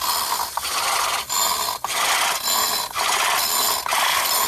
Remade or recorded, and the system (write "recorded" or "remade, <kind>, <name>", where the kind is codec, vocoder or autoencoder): recorded